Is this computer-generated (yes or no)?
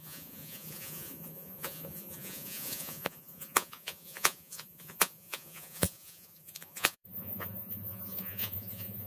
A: yes